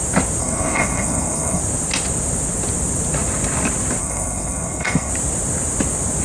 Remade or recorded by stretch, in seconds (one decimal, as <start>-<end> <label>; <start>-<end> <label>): 0.0-0.4 recorded; 0.4-1.6 remade; 1.6-4.0 recorded; 4.0-5.1 remade; 5.1-6.2 recorded